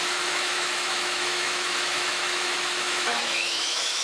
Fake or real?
fake